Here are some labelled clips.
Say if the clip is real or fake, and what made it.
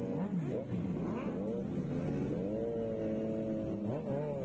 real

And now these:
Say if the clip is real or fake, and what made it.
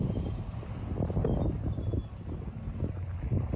real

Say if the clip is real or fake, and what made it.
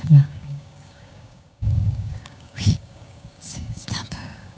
fake, codec, DAC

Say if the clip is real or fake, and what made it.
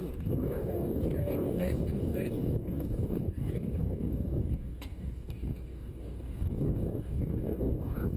fake, codec, DAC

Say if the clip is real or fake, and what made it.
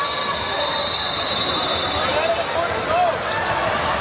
real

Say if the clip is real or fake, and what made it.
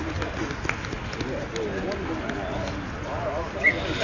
real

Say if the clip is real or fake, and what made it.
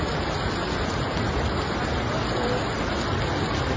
real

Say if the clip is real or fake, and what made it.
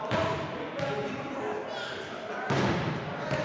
real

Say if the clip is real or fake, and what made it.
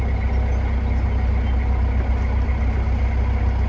real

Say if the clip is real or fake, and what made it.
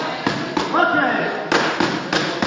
real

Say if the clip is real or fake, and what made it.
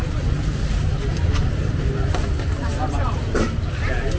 real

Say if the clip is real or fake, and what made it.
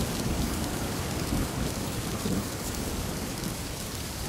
fake, codec, DAC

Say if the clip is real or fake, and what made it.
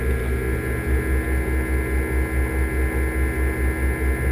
real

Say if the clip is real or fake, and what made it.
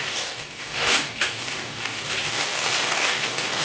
fake, codec, DAC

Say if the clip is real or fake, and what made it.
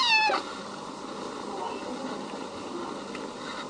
real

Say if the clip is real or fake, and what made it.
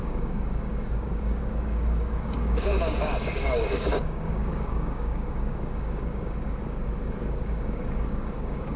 fake, codec, DAC